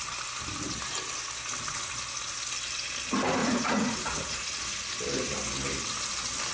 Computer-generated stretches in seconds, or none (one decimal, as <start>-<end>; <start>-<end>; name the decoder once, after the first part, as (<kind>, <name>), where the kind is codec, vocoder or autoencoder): 3.4-4.5 (vocoder, Vocos)